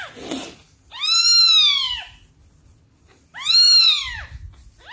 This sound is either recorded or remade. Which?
recorded